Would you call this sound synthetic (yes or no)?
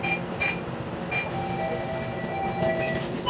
no